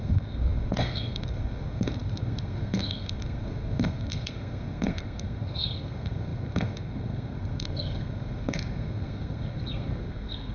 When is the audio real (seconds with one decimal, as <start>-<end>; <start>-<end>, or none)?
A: none